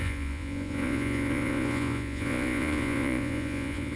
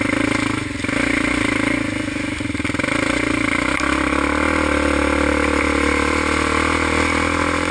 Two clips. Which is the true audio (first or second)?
second